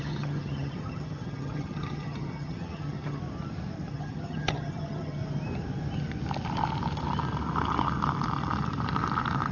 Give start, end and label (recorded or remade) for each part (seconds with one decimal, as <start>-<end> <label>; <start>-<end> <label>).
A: 0.0-3.2 remade; 3.2-3.9 recorded; 3.9-5.2 remade; 5.2-9.5 recorded

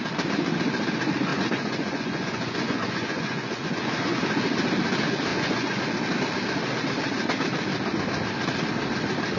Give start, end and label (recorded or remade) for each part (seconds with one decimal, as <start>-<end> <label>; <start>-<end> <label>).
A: 0.0-1.3 recorded; 1.3-4.2 remade; 4.2-5.3 recorded; 5.3-5.8 remade; 5.8-9.4 recorded